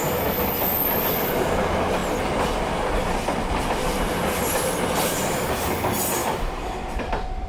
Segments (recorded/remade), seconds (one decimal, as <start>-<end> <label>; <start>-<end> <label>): 0.0-7.5 recorded